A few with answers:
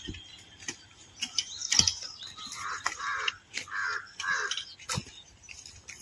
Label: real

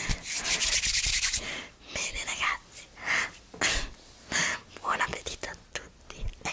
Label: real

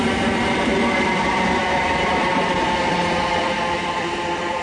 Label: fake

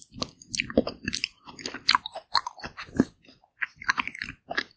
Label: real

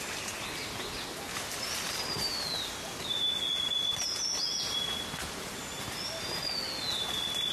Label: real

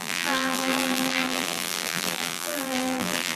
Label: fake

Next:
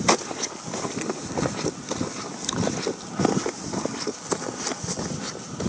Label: real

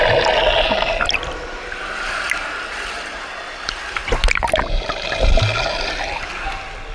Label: real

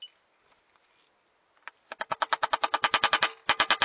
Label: real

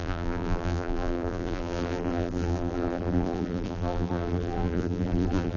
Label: fake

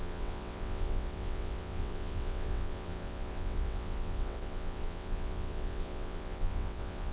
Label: fake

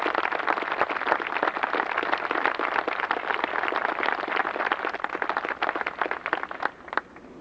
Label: real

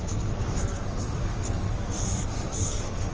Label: fake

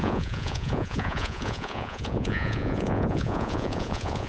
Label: fake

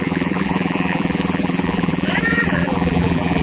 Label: fake